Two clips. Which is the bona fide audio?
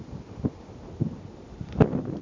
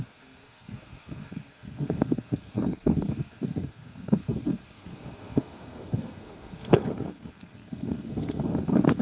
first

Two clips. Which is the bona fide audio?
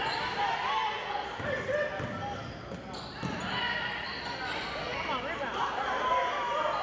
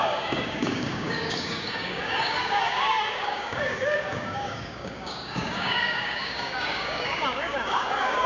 first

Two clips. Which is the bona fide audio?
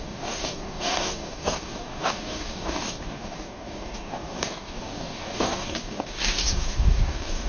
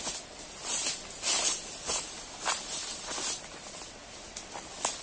second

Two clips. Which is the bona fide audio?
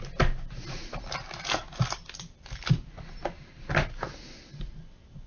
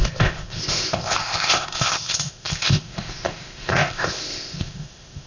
first